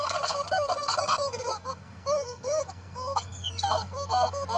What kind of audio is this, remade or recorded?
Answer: remade